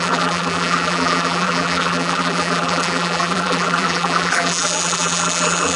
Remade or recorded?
remade